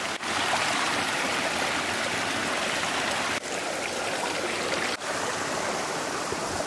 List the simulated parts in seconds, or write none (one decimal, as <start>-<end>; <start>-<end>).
none